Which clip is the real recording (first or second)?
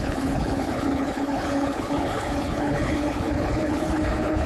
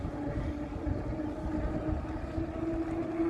second